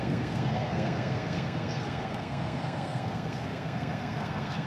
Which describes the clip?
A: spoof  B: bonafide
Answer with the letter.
A